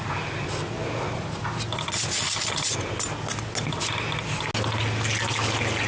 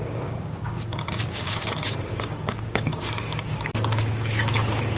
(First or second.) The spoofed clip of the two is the second